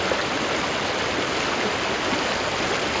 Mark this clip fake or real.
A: real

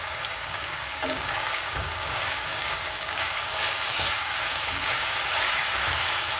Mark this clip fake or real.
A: fake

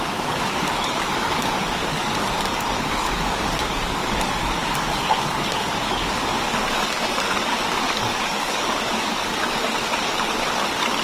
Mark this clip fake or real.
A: fake